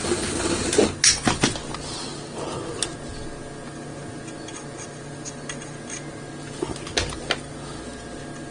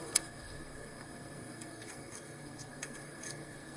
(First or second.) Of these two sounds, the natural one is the first